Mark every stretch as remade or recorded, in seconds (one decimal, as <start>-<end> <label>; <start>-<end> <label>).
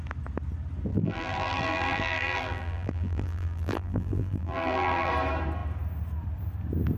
0.0-0.9 recorded; 0.9-5.1 remade; 5.1-7.0 recorded